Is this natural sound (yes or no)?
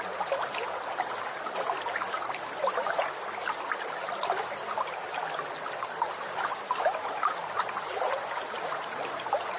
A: yes